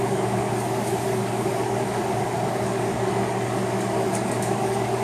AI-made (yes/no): yes